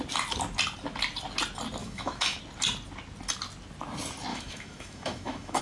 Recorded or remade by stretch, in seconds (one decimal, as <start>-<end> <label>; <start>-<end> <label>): 0.0-1.8 recorded; 1.8-2.4 remade; 2.4-4.3 recorded; 4.3-5.6 remade